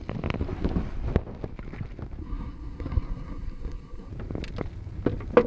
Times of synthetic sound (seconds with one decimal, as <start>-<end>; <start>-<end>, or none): 2.2-4.1